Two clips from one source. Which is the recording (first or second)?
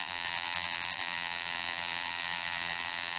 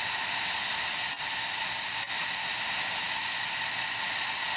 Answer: second